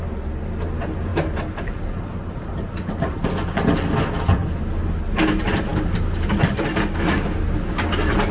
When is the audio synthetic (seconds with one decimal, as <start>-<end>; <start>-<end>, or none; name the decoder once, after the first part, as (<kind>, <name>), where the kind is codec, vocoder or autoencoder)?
none